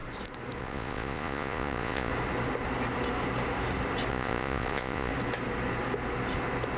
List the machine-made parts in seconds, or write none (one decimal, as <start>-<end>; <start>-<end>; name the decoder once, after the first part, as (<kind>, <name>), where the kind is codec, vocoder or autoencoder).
0.6-2.1 (vocoder, Vocos); 4.1-5.1